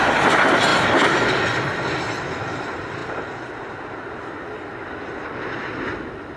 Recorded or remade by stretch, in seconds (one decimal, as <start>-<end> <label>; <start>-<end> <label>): 0.0-6.4 recorded